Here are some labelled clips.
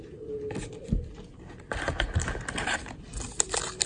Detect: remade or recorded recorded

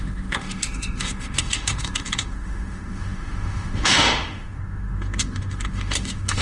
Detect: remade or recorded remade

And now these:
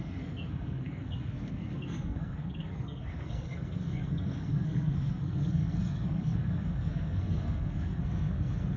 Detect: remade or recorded remade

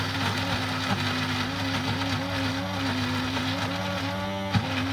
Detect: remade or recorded recorded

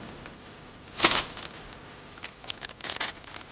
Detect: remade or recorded recorded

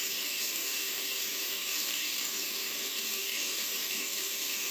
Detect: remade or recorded remade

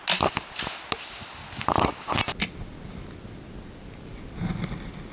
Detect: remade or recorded recorded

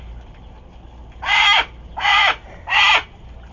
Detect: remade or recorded recorded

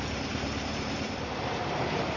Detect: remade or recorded remade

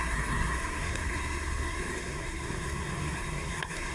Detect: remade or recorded remade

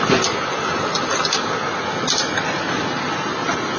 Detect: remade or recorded recorded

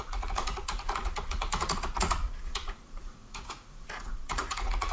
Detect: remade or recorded remade